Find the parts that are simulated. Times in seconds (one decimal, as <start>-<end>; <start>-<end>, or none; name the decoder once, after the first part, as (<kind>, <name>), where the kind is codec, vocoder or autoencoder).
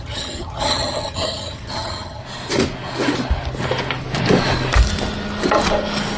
0.0-2.2 (vocoder, HiFi-GAN)